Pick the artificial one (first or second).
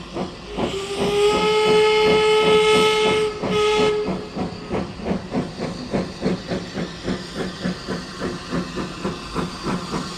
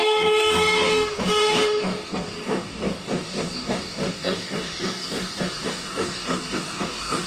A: second